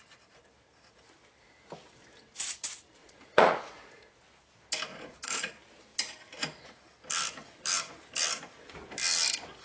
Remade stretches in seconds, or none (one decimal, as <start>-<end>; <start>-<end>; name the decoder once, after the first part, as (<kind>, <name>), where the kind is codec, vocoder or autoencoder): 3.0-4.1 (vocoder, Vocos); 4.9-5.4